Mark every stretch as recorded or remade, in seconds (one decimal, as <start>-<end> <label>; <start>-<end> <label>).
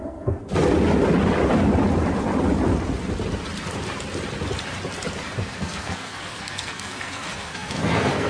0.0-0.4 remade; 0.4-5.4 recorded; 5.4-8.3 remade